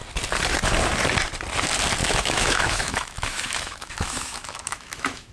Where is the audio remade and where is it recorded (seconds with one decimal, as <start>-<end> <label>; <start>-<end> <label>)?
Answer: 0.0-2.0 recorded; 2.0-5.3 remade